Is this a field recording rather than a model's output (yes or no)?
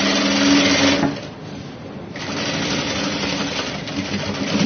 yes